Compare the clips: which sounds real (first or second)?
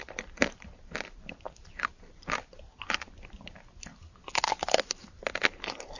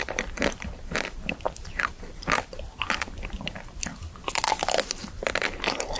first